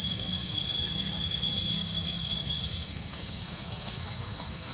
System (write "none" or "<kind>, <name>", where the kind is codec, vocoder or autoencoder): codec, SNAC